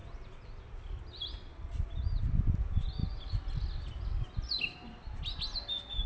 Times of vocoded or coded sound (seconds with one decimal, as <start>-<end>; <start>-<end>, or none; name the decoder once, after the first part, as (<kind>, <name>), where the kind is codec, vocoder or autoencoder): none